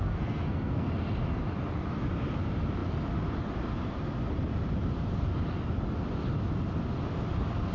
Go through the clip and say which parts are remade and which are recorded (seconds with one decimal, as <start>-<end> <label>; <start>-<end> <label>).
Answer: 0.0-0.9 remade; 0.9-7.7 recorded